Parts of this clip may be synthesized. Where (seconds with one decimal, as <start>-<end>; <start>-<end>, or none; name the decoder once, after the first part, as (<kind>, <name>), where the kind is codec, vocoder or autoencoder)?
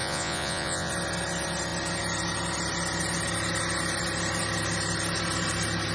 0.0-0.9 (vocoder, Vocos)